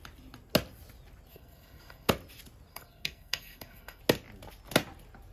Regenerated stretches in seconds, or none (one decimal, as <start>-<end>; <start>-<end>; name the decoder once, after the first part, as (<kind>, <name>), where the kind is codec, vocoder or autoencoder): 1.3-2.1 (codec, SNAC); 2.7-4.0